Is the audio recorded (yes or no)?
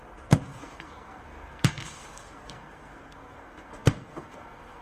no